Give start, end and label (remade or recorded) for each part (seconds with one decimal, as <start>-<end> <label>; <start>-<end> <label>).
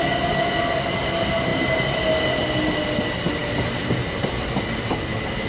0.0-3.4 recorded; 3.4-4.3 remade; 4.3-5.5 recorded